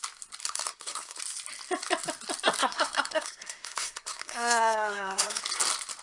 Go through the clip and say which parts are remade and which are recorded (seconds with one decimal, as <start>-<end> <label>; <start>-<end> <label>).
0.0-0.4 recorded; 0.4-1.2 remade; 1.2-2.6 recorded; 2.6-5.4 remade; 5.4-6.0 recorded